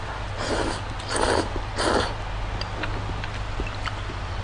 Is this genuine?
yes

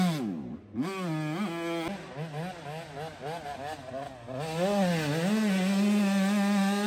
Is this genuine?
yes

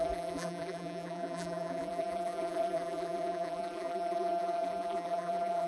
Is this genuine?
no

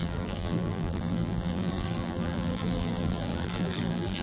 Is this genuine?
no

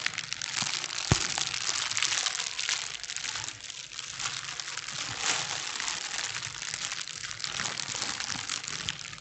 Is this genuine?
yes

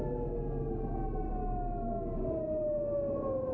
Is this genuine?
yes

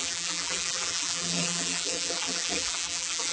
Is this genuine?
no